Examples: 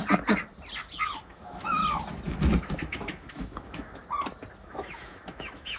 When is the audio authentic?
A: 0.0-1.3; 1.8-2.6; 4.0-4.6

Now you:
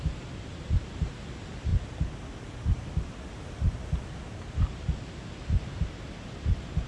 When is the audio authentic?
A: 0.0-6.9

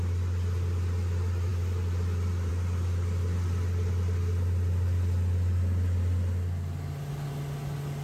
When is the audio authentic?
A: 0.0-8.0